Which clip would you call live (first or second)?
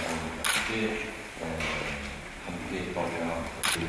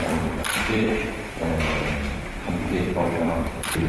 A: first